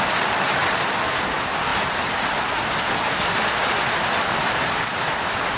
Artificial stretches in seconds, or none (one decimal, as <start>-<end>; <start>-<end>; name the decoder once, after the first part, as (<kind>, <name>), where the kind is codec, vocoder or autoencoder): none

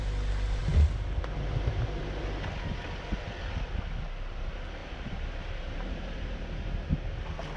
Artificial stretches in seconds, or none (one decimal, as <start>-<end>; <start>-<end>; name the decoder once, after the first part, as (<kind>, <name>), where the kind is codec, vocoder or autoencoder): 4.8-6.4 (vocoder, BigVGAN v2)